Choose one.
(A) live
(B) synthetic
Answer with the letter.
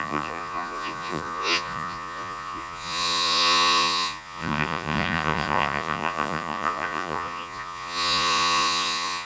B